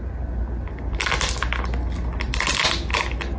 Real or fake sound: real